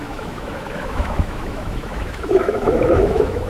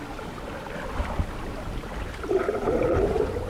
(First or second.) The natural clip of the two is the second